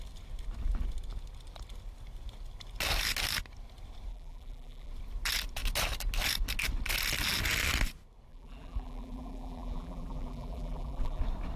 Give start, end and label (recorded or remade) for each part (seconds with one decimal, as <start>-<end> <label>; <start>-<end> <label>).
0.0-4.1 recorded; 4.1-4.9 remade; 4.9-8.3 recorded; 8.3-11.2 remade; 11.2-11.6 recorded